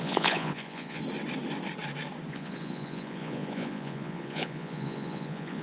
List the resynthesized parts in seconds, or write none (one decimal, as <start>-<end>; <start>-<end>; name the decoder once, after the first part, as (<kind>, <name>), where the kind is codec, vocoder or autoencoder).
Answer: 0.0-1.0 (vocoder, Vocos); 2.3-5.6